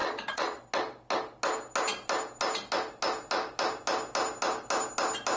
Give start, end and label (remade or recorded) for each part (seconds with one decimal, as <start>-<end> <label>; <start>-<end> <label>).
0.0-0.6 remade; 0.6-5.4 recorded